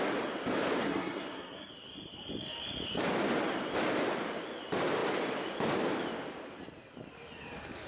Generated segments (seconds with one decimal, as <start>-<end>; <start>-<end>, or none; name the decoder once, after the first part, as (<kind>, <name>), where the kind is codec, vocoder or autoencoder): 0.8-1.7 (codec, SNAC)